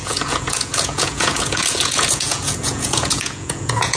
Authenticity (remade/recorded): remade